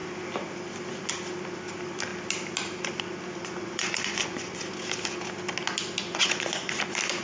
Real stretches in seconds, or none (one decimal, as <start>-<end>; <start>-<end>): 0.0-3.4; 4.6-6.0; 6.8-7.2